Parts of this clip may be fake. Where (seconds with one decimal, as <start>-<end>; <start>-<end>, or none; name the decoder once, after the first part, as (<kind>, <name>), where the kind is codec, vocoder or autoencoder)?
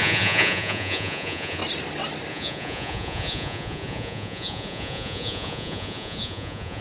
0.0-1.6 (vocoder, Vocos); 2.3-6.8